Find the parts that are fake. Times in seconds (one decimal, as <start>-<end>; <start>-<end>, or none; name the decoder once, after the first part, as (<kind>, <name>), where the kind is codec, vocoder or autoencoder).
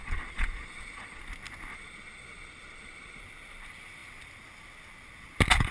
0.0-1.2 (vocoder, Vocos); 1.7-3.2